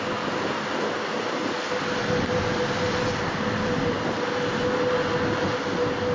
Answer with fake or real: real